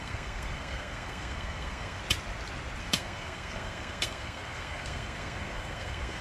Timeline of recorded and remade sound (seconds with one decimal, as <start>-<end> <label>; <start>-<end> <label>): 0.0-2.0 remade; 2.0-2.8 recorded; 2.8-6.2 remade